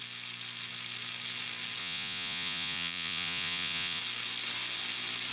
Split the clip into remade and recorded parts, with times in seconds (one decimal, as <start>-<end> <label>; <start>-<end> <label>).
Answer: 0.0-1.8 recorded; 1.8-4.0 remade; 4.0-5.3 recorded